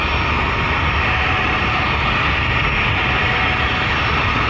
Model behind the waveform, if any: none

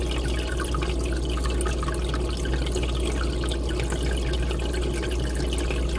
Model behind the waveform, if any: none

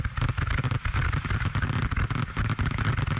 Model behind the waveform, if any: none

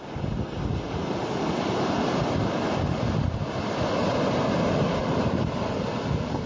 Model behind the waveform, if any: none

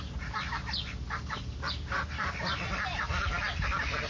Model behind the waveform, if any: none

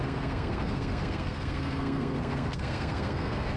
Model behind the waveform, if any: codec, SNAC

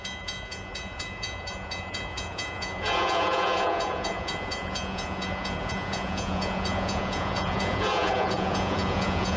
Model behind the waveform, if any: vocoder, Vocos